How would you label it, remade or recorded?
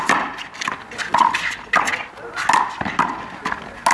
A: recorded